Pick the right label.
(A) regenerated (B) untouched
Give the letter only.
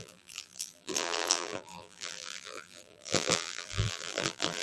A